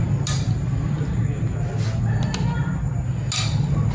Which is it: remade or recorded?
recorded